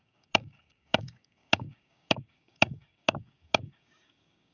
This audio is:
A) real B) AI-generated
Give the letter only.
B